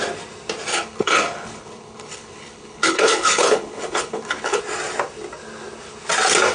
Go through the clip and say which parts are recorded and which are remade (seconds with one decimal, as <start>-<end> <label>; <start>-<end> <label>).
0.0-0.7 recorded; 0.7-4.6 remade; 4.6-6.5 recorded